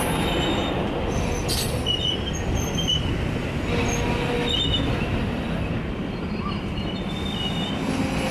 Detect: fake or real real